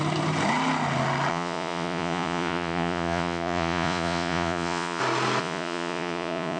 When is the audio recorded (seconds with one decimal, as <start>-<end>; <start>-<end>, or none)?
0.0-1.3; 5.0-5.4